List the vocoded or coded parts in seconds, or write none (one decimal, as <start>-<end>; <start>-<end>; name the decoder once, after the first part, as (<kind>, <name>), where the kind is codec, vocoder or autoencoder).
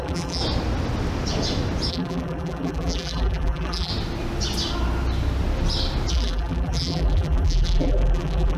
0.0-0.4 (vocoder, BigVGAN v2); 1.9-3.9; 6.1-8.6